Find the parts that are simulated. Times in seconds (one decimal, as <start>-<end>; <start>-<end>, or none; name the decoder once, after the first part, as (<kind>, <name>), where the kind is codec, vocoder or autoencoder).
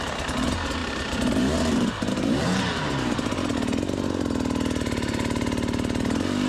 0.0-3.5 (vocoder, BigVGAN v2); 6.0-6.5